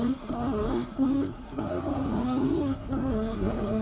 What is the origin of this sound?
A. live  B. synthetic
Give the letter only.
B